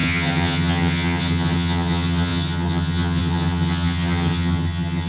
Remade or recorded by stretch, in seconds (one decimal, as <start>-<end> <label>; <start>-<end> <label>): 0.0-5.1 remade